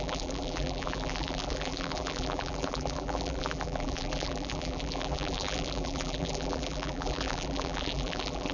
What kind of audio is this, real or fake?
fake